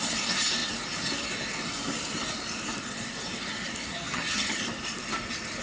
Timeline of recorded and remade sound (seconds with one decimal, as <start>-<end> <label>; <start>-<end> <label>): 0.0-3.9 recorded; 3.9-4.6 remade; 4.6-5.6 recorded